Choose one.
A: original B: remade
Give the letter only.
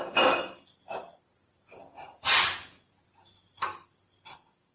A